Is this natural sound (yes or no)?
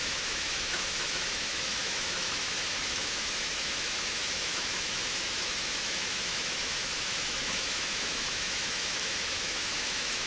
no